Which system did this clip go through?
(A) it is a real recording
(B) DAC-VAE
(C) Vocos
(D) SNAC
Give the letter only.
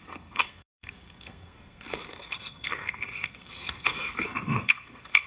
D